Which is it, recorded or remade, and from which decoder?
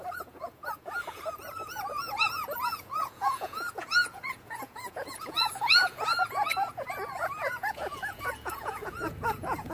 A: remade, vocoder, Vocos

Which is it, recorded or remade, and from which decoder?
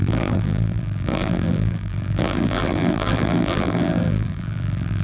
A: remade, vocoder, BigVGAN v2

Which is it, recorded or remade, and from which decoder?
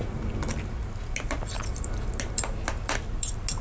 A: recorded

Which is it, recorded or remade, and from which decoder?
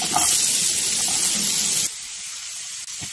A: recorded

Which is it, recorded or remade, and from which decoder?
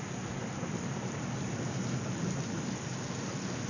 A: recorded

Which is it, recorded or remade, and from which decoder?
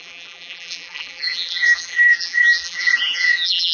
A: remade, vocoder, BigVGAN v2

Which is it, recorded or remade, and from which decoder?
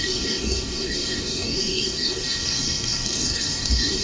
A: remade, codec, DAC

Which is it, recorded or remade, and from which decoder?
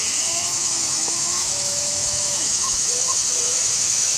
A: remade, autoencoder, DAC-VAE